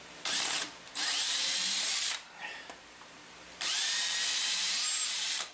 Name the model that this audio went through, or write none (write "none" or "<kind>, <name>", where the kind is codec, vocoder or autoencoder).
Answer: vocoder, BigVGAN v2